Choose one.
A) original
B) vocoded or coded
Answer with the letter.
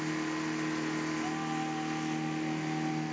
A